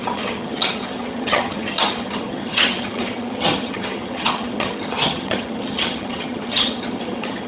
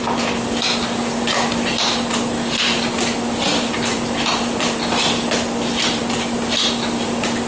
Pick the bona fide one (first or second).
second